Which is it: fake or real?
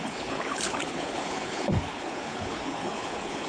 fake